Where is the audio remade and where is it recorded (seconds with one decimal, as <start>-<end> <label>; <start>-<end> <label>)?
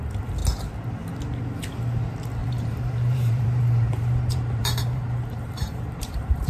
0.0-2.4 recorded; 2.4-6.5 remade